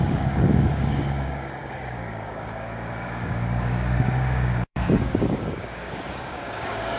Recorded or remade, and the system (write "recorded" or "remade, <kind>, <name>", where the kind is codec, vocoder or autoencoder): remade, codec, DAC